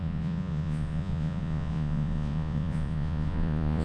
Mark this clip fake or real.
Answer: fake